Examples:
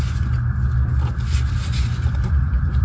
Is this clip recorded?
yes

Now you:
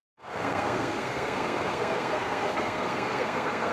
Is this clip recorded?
no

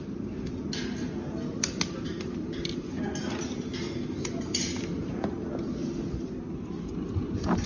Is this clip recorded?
yes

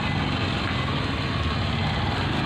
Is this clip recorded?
yes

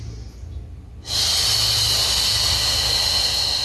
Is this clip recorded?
yes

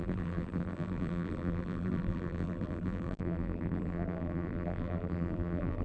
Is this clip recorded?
no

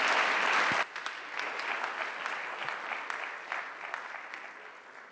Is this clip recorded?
yes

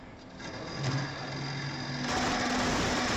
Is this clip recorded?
yes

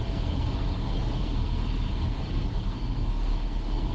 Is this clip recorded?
no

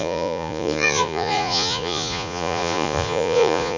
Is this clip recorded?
no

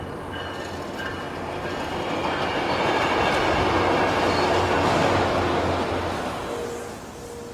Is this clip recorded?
yes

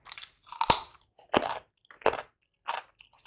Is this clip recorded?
yes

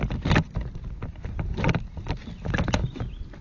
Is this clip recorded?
yes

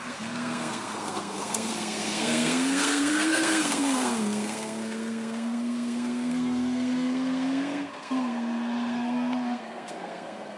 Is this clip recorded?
no